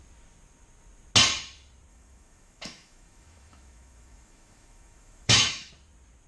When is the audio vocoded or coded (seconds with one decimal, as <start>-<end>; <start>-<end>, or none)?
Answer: 1.9-5.7